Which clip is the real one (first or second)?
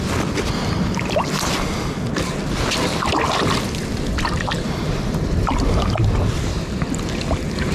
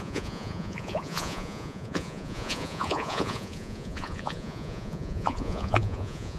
first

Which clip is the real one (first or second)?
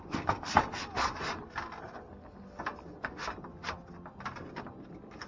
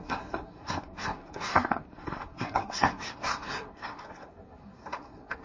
first